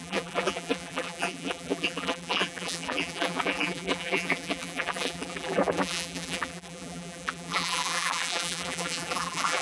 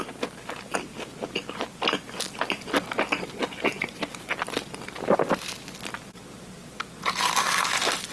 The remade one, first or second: first